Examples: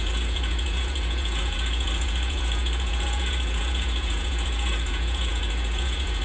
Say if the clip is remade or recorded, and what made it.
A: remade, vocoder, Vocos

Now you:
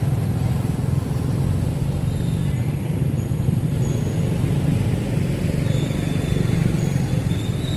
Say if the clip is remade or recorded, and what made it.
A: recorded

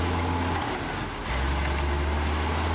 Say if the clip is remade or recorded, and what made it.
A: recorded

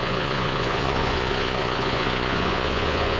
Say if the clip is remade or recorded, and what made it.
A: remade, vocoder, Vocos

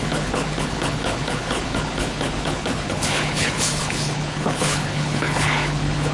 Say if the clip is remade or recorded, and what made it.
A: remade, codec, HILCodec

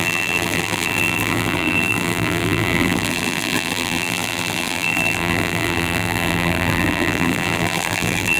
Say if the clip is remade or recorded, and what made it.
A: remade, vocoder, BigVGAN v2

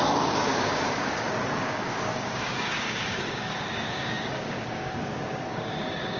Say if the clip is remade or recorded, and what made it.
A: remade, codec, DAC